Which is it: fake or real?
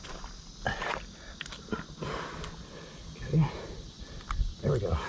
real